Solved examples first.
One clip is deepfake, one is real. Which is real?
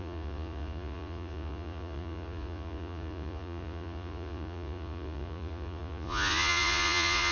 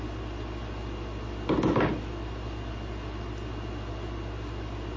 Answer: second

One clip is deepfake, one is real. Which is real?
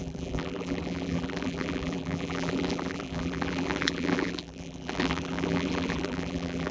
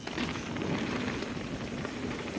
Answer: second